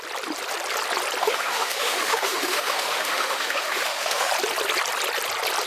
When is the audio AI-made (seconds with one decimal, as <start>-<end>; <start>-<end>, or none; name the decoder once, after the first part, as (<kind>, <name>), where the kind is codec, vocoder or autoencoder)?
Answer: 1.2-4.3 (autoencoder, DAC-VAE)